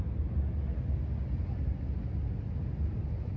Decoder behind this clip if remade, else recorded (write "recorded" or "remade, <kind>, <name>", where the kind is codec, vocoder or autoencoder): recorded